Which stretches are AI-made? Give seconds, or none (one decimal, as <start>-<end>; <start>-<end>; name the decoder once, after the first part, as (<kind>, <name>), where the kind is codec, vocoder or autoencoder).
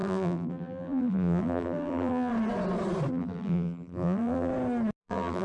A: 0.0-2.3 (vocoder, BigVGAN v2); 3.1-4.5; 5.0-5.4